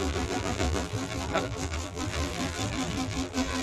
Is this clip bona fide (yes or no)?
no